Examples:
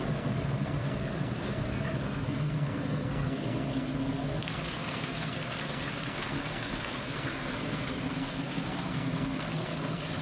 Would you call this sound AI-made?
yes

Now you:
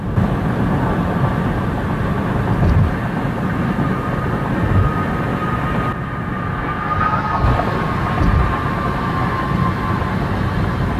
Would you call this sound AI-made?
no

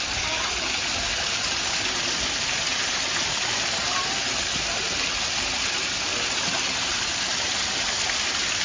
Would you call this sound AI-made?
no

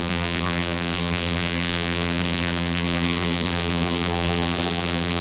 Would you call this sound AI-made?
yes